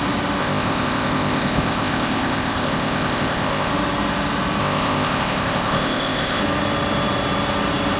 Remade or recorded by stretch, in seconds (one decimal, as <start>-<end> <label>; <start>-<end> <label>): 0.0-0.4 recorded; 0.4-3.7 remade; 3.7-4.6 recorded; 4.6-6.4 remade; 6.4-8.0 recorded